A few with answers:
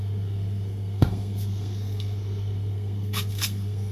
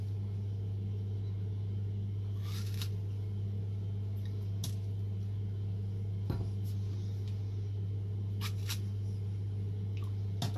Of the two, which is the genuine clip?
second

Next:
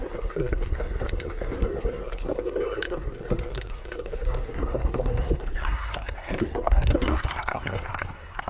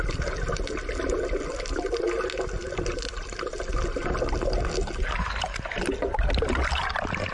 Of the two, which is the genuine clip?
second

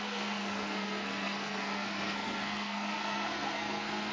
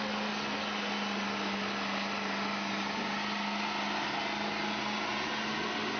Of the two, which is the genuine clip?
second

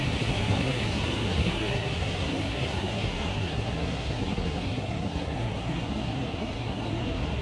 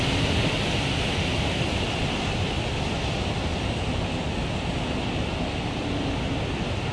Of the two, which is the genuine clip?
second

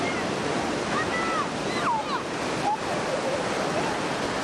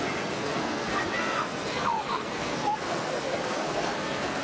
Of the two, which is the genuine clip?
first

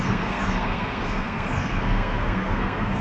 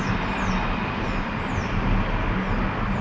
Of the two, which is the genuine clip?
second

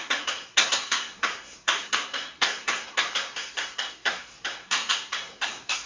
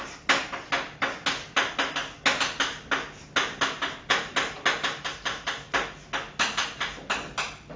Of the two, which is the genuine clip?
second